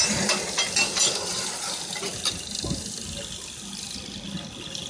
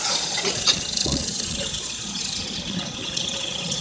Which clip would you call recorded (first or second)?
first